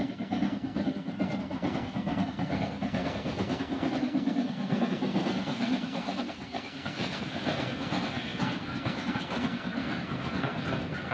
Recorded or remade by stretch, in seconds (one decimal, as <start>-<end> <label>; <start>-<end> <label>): 0.0-11.1 remade